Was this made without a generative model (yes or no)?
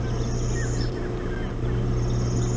yes